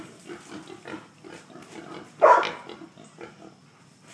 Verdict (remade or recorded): recorded